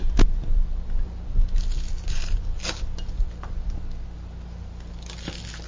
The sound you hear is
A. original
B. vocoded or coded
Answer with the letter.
A